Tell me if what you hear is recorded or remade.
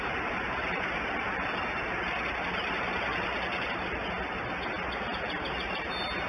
recorded